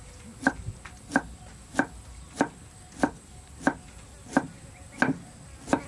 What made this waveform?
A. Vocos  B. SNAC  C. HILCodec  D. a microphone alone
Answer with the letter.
D